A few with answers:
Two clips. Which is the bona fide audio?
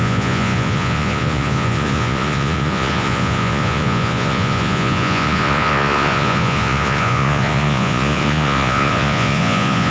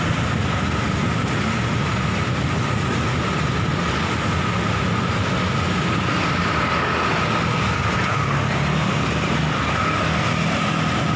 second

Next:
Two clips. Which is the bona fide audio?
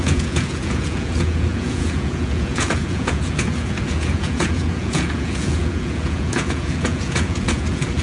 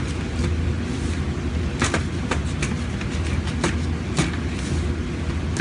second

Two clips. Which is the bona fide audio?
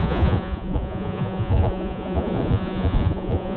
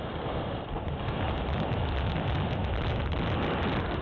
second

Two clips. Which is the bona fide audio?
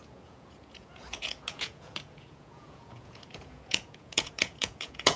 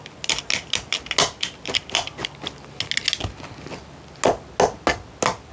second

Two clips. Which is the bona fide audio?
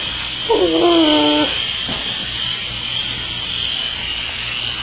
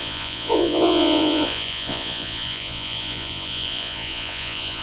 first